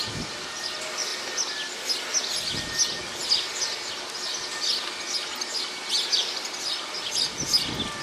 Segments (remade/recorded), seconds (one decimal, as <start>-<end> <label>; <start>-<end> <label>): 0.0-8.0 recorded